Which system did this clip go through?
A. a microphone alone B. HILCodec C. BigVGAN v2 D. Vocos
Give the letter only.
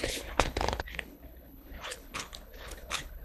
B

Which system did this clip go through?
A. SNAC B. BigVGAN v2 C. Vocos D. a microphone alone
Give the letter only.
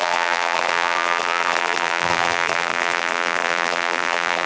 B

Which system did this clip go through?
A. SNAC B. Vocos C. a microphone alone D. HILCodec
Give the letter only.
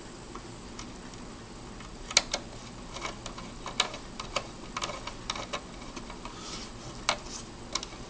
C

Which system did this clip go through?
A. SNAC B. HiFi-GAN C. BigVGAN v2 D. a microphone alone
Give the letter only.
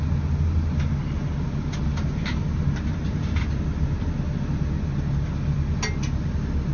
D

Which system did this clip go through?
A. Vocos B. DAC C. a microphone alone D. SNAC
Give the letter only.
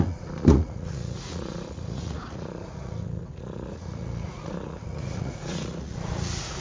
A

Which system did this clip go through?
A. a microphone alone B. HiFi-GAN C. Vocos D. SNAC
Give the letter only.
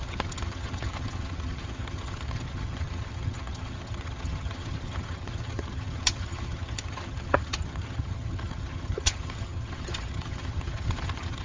B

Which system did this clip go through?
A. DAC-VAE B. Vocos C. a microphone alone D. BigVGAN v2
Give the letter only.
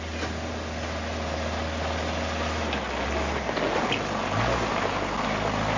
C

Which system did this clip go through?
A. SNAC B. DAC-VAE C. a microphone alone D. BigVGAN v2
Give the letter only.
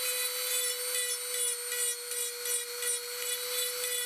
C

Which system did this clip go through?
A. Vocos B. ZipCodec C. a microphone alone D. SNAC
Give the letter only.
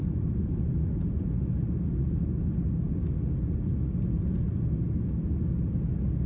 C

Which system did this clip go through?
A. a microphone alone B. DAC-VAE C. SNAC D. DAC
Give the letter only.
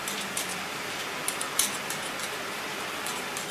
A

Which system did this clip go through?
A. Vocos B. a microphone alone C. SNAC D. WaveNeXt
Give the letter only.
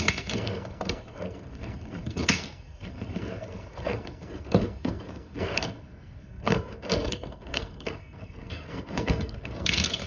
C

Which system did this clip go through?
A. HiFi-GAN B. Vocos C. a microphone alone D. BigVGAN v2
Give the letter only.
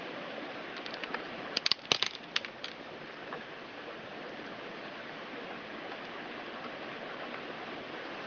C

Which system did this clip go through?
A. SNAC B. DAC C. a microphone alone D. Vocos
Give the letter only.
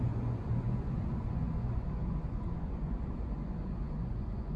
D